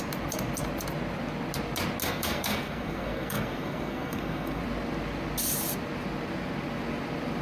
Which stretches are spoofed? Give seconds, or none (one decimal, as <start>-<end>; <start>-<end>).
2.0-4.6